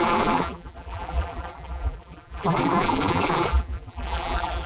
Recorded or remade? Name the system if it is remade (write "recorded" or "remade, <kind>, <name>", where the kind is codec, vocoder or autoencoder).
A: remade, vocoder, BigVGAN v2